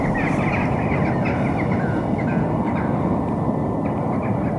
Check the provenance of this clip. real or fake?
real